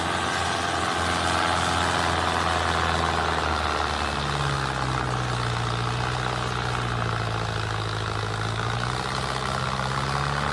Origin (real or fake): real